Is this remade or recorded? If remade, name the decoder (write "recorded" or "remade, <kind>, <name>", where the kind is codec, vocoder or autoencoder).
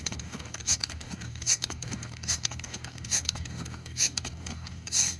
remade, codec, DAC